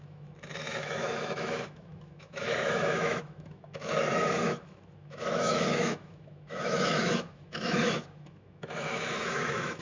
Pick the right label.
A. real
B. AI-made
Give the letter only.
B